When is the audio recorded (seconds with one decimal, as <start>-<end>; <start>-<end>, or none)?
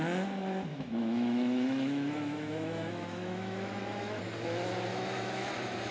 0.0-0.7; 4.2-4.9; 5.5-5.9